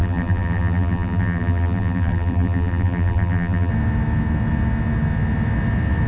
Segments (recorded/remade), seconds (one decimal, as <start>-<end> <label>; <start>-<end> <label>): 0.0-3.7 remade; 3.7-6.1 recorded